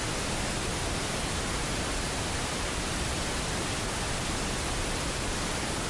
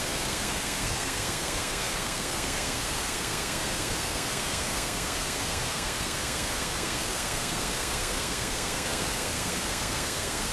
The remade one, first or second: second